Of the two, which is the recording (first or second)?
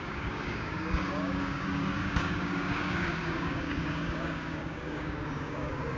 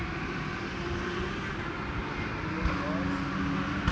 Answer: second